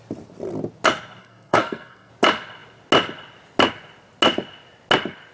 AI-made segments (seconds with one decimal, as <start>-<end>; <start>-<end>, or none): 1.2-2.1